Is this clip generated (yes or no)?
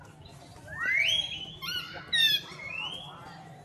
no